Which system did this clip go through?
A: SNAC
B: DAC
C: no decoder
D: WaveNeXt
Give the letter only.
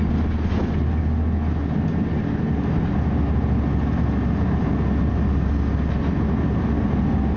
C